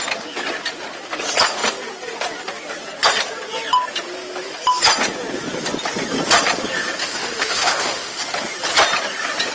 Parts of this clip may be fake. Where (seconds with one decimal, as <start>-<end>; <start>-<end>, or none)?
7.0-8.2